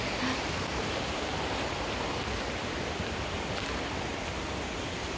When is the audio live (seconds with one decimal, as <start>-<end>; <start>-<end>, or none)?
0.0-0.7; 2.2-2.6; 4.1-5.2